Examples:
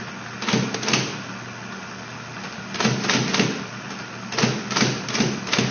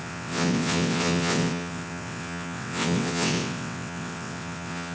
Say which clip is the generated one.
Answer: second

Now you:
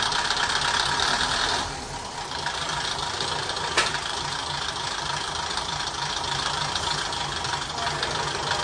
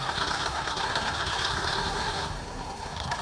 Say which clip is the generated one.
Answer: second